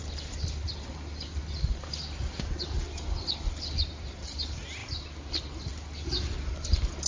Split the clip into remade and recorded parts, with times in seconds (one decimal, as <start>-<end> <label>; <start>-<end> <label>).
0.0-7.1 recorded